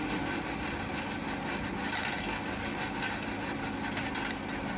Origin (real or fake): real